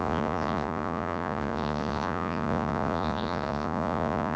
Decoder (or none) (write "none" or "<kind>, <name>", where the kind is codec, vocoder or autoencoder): vocoder, Vocos